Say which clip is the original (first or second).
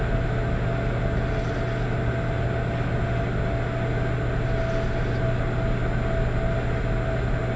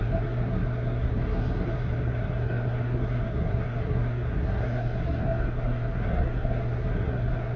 first